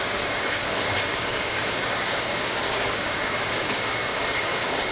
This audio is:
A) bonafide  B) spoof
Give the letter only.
B